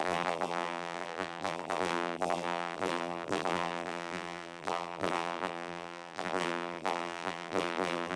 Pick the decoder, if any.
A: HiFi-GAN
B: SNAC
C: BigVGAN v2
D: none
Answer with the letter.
C